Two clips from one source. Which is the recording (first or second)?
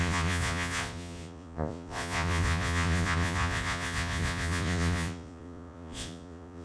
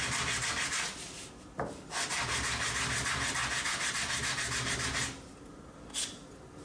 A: second